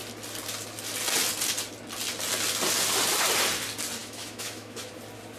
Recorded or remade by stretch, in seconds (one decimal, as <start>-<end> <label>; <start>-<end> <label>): 0.0-4.0 recorded; 4.0-4.9 remade; 4.9-5.4 recorded